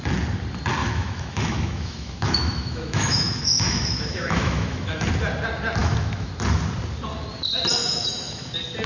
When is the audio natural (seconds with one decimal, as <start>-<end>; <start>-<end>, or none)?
0.0-0.8; 5.1-5.8; 6.3-7.8; 8.5-8.9